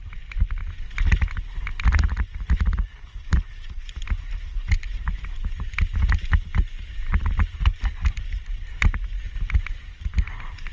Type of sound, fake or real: real